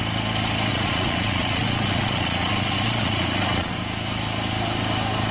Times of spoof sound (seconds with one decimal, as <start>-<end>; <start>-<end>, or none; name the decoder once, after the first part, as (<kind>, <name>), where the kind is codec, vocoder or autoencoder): 0.7-3.7 (vocoder, Vocos)

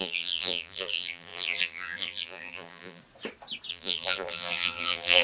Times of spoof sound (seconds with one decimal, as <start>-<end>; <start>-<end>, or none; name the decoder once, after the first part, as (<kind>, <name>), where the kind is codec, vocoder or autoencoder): 0.0-3.0 (vocoder, BigVGAN v2); 3.7-5.2

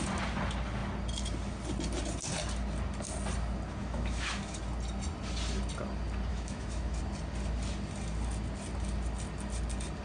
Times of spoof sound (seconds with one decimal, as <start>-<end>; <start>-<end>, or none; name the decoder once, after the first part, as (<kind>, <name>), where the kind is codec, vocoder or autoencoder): 3.8-4.6 (autoencoder, DAC-VAE); 6.3-7.0

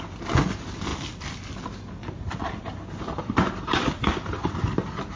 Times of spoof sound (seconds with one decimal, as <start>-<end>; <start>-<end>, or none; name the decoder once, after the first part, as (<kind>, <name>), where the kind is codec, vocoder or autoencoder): 0.9-1.6 (vocoder, BigVGAN v2); 2.0-4.6